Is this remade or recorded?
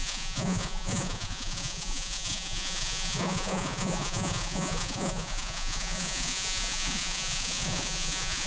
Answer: remade